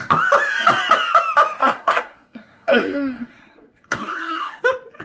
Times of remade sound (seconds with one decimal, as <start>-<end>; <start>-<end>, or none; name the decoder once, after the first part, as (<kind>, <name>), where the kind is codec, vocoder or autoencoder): 1.6-4.6 (codec, SNAC)

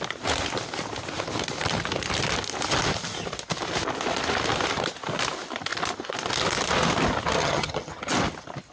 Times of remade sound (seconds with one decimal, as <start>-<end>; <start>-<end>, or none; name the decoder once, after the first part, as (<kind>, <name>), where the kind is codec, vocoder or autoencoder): 7.4-8.1 (vocoder, HiFi-GAN)

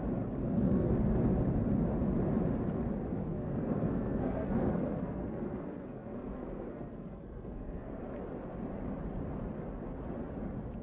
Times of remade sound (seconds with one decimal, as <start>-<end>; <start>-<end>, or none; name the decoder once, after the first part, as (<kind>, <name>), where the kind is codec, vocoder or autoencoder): 0.4-0.9 (codec, SNAC); 3.2-8.0

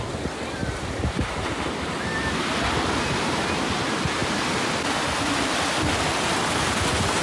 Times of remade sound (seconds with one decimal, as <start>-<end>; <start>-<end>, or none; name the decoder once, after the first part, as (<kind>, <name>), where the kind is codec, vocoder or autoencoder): 0.6-1.5 (vocoder, BigVGAN v2)

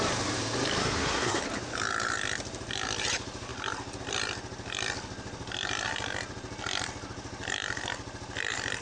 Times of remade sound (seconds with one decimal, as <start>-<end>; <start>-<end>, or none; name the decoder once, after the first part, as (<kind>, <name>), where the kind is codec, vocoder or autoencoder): 0.8-1.4 (codec, SNAC)